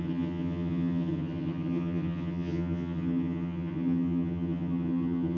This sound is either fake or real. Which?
fake